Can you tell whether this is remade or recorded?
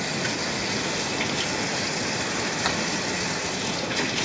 remade